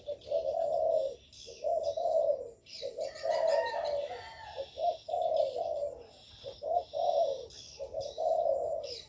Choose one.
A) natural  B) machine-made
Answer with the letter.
A